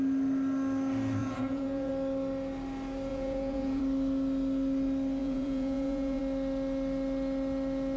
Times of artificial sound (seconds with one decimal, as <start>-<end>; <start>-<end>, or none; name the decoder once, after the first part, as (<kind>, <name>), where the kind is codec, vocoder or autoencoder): 1.2-1.9 (vocoder, Vocos); 3.1-3.8; 5.2-6.2